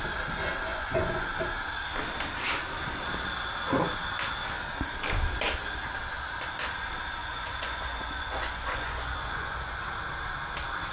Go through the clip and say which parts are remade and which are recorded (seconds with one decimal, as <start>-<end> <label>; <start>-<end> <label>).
0.0-0.7 recorded; 0.7-1.3 remade; 1.3-7.2 recorded; 7.2-9.8 remade; 9.8-10.9 recorded